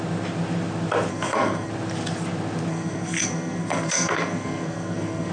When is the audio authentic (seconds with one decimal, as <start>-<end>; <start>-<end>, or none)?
0.0-1.1; 1.7-2.7